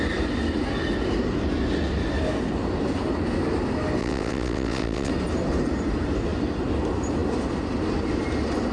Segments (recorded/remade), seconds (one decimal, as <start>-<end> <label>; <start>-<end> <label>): 0.0-4.0 recorded; 4.0-5.1 remade; 5.1-8.7 recorded